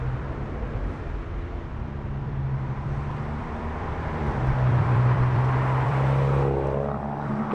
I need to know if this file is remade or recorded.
remade